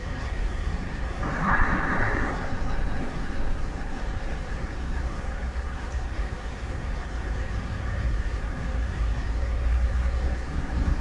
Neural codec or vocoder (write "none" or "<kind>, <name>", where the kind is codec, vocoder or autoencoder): codec, SNAC